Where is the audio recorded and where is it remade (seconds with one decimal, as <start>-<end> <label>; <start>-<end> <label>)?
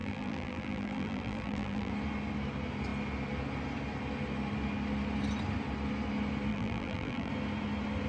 0.0-1.9 remade; 1.9-6.5 recorded; 6.5-7.3 remade; 7.3-8.1 recorded